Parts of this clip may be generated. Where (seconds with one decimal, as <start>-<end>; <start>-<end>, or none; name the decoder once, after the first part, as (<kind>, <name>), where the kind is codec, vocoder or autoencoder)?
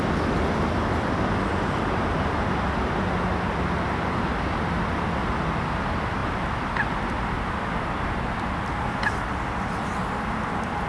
none